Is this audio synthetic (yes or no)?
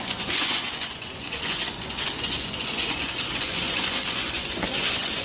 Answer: yes